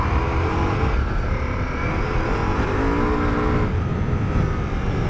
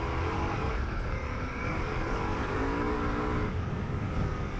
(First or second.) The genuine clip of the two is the first